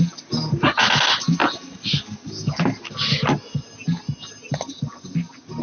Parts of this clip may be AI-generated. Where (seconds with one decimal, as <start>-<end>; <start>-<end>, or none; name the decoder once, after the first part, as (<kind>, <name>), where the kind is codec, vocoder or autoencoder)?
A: none